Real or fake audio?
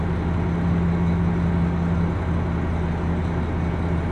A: real